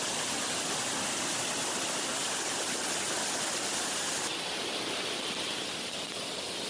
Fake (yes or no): no